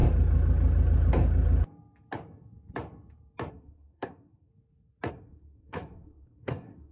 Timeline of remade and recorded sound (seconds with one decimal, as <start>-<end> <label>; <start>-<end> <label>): 0.0-3.5 recorded; 3.5-4.5 remade; 4.5-5.1 recorded; 5.1-6.9 remade